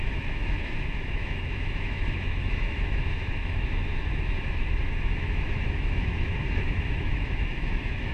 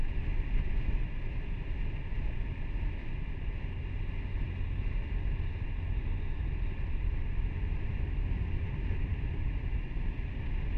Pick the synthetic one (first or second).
first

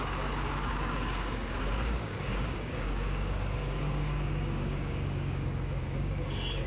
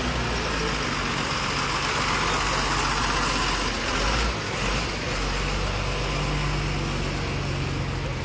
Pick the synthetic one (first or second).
first